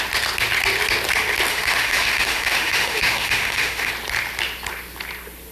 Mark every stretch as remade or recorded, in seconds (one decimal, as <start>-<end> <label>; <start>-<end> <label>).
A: 0.0-1.5 recorded; 1.5-3.9 remade; 3.9-5.5 recorded